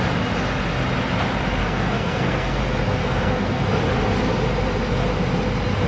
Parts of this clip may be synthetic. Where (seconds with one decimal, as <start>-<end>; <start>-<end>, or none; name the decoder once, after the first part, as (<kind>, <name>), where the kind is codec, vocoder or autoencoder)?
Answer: 1.6-2.6 (codec, SNAC); 3.0-3.6